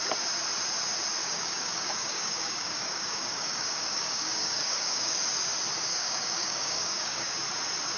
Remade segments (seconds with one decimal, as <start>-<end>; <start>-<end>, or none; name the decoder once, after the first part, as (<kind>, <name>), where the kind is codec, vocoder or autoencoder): 1.2-5.3 (codec, DAC); 5.9-7.3